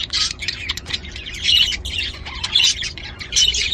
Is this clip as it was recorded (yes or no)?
no